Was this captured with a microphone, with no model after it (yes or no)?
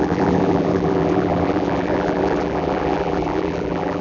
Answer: no